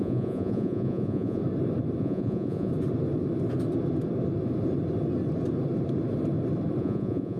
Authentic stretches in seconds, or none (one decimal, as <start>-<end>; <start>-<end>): 1.4-2.0; 2.7-6.8